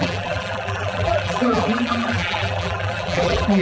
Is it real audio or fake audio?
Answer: fake